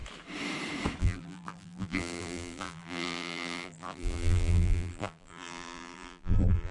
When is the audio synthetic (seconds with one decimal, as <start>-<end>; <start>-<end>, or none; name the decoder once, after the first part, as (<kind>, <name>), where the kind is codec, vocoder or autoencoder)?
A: 1.0-6.7 (vocoder, BigVGAN v2)